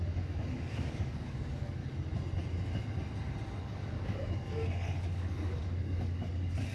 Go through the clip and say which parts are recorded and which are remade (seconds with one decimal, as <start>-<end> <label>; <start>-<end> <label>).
0.0-1.8 remade; 1.8-3.6 recorded; 3.6-6.7 remade